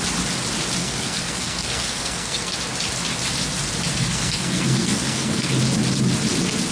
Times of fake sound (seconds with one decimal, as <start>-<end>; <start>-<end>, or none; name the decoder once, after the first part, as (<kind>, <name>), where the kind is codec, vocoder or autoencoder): 0.8-2.5 (codec, SNAC); 3.9-5.5